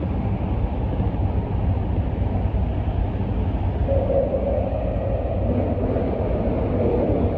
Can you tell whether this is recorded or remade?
recorded